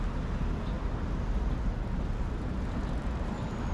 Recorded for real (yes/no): yes